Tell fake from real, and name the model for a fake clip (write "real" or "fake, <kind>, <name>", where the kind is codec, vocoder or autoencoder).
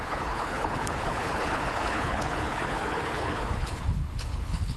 fake, codec, HILCodec